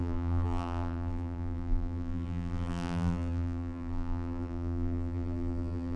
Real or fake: fake